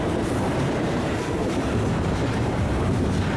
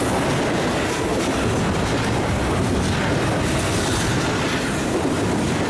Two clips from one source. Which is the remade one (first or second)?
first